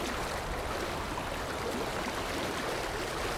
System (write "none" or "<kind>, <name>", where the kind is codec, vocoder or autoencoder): none